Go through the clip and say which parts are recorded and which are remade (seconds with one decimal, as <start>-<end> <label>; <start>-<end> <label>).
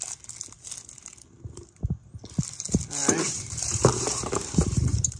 0.0-3.0 recorded; 3.0-5.2 remade